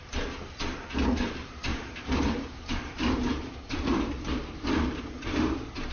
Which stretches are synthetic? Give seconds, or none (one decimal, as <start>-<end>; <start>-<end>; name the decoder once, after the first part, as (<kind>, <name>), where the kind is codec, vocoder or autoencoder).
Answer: 1.7-5.0 (vocoder, BigVGAN v2)